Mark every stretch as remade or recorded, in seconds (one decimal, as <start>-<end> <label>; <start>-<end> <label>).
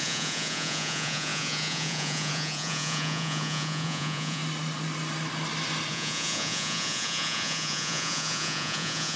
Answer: 0.0-4.4 remade; 4.4-5.9 recorded; 5.9-9.2 remade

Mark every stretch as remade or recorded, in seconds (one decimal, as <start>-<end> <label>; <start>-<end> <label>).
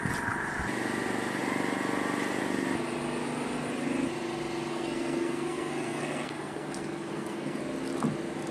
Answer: 0.0-4.7 recorded; 4.7-7.6 remade; 7.6-8.5 recorded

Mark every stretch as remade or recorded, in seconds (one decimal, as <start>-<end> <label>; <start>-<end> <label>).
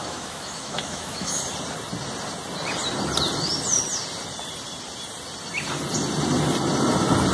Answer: 0.0-1.4 remade; 1.4-7.3 recorded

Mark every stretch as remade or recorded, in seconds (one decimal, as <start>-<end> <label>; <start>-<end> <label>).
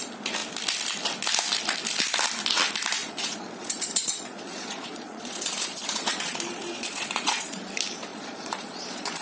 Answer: 0.0-3.0 recorded; 3.0-7.7 remade; 7.7-8.1 recorded; 8.1-9.2 remade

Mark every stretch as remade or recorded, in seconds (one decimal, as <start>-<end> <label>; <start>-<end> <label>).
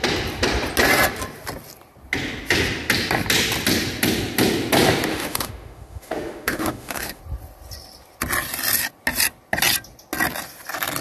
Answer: 0.0-5.1 recorded; 5.1-7.2 remade; 7.2-11.0 recorded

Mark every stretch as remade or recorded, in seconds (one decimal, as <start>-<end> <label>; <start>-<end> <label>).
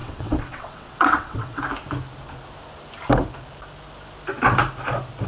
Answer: 0.0-1.6 remade; 1.6-5.3 recorded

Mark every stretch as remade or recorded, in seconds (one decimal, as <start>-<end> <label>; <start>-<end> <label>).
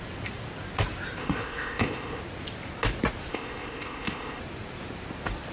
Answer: 0.0-1.2 recorded; 1.2-2.2 remade; 2.2-3.3 recorded; 3.3-4.4 remade; 4.4-5.5 recorded